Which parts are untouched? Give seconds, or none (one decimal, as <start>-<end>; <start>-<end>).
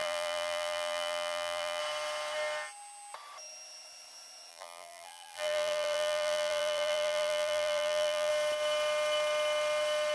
1.8-4.5; 8.3-10.1